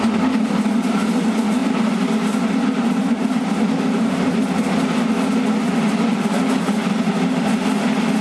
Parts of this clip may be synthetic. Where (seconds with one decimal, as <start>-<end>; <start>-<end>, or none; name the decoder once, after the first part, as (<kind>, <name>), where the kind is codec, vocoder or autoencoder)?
none